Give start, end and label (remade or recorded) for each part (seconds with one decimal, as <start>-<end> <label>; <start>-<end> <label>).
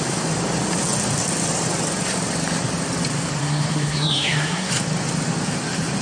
0.0-3.4 recorded; 3.4-4.7 remade; 4.7-6.0 recorded